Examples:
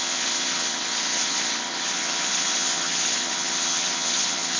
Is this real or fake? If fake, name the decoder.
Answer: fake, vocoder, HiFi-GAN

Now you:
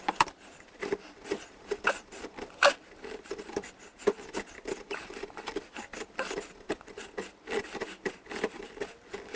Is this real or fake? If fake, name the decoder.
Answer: real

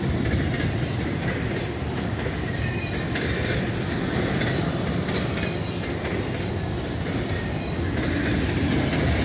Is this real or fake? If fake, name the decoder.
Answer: real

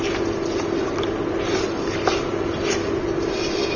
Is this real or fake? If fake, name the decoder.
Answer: real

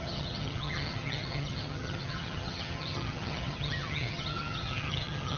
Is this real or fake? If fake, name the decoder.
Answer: fake, vocoder, HiFi-GAN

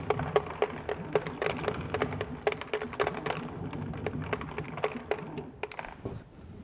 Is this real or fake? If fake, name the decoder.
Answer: real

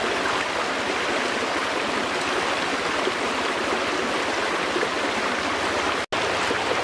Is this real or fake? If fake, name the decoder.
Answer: real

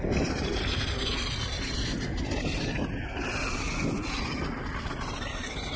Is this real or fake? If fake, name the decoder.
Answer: real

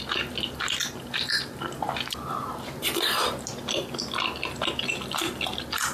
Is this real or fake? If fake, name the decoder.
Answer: real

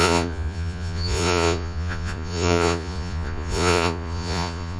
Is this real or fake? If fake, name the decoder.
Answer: fake, vocoder, Vocos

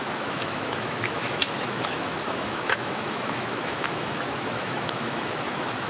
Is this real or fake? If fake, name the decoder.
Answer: fake, autoencoder, DAC-VAE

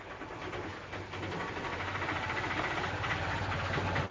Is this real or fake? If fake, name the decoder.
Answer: real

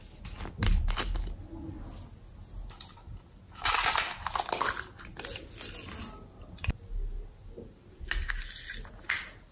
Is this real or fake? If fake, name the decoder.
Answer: real